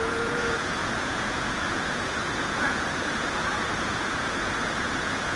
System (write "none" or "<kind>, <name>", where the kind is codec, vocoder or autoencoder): vocoder, Vocos